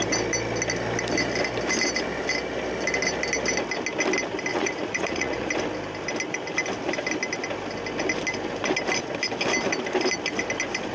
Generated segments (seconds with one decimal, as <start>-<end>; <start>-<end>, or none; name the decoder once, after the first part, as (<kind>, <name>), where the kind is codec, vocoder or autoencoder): 4.5-5.5 (vocoder, Vocos)

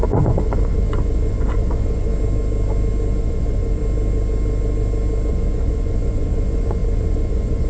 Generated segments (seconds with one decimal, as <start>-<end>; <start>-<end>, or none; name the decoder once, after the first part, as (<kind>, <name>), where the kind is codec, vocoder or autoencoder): 0.0-2.1 (vocoder, Vocos); 3.2-3.8; 5.3-7.7

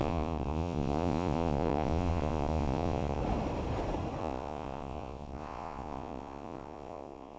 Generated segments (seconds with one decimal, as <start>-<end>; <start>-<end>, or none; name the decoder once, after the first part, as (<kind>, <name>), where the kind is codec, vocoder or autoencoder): 0.0-3.2 (vocoder, Vocos); 4.2-7.4

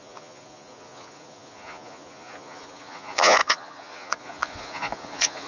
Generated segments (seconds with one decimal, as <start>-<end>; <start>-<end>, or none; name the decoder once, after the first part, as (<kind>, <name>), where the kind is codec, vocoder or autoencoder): 0.0-5.5 (vocoder, Vocos)

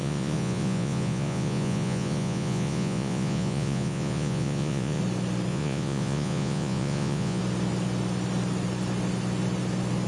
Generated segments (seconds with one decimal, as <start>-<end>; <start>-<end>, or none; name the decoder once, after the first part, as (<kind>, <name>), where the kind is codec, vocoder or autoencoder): 0.0-5.0 (vocoder, Vocos); 5.5-7.4

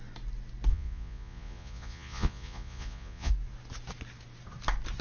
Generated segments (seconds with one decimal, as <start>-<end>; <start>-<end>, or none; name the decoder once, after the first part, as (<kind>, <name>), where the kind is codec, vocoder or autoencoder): 0.7-3.3 (vocoder, Vocos)

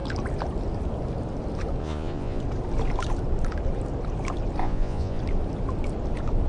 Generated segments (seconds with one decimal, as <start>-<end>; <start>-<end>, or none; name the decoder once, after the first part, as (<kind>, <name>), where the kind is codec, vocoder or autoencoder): 1.8-2.4 (vocoder, Vocos); 4.6-5.2

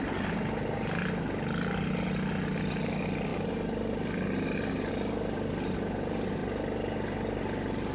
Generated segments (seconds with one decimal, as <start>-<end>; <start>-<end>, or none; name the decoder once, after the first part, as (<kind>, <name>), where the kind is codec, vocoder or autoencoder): none